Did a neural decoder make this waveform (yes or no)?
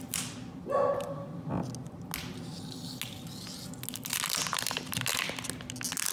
no